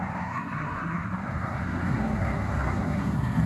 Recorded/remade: remade